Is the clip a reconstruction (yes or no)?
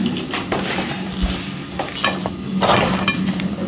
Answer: no